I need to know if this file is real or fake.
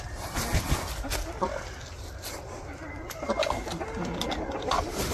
real